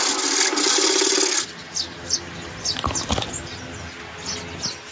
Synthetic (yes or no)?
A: no